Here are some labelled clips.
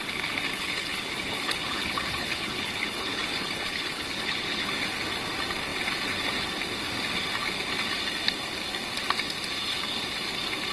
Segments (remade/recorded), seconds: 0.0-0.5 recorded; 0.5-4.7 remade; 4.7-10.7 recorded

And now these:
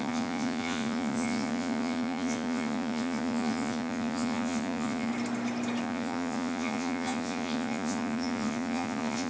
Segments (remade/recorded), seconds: 0.0-5.1 remade; 5.1-5.8 recorded; 5.8-9.3 remade

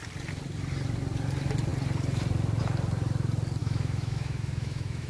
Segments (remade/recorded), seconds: 0.0-3.6 recorded; 3.6-5.1 remade

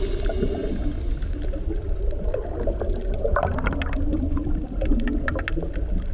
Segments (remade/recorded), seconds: 0.0-6.1 recorded

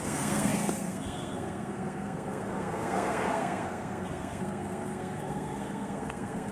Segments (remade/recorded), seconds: 0.0-6.5 remade

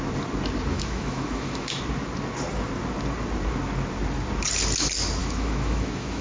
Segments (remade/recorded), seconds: 0.0-0.7 recorded; 0.7-1.8 remade; 1.8-5.2 recorded; 5.2-6.2 remade

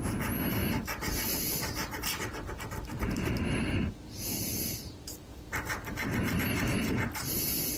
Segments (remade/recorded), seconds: 0.0-7.8 recorded